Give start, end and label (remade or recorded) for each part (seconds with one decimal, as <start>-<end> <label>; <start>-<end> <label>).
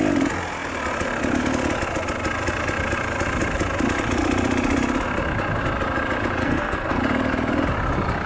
0.0-6.4 recorded; 6.4-7.0 remade; 7.0-8.3 recorded